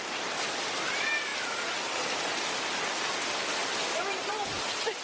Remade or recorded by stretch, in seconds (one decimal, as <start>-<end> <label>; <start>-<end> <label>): 0.0-1.3 remade; 1.3-4.3 recorded; 4.3-5.0 remade